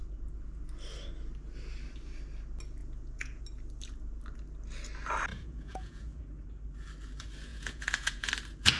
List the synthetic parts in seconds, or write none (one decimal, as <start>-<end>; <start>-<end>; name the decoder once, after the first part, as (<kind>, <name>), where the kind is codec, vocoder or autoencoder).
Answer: 2.8-3.4 (vocoder, Vocos); 5.3-6.2; 7.5-8.3